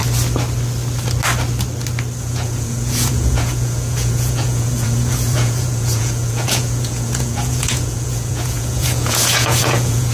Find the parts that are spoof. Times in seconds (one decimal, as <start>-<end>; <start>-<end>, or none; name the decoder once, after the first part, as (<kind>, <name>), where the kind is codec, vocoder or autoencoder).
2.2-10.1 (vocoder, Vocos)